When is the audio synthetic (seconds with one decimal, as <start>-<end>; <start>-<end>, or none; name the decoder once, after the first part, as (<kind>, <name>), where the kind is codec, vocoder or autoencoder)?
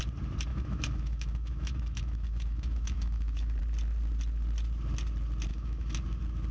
0.5-3.6 (autoencoder, DAC-VAE); 5.5-6.0